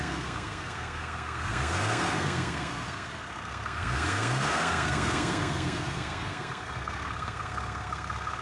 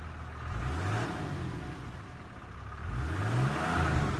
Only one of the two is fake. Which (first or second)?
first